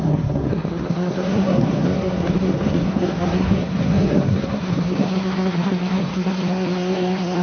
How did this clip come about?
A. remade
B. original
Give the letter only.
A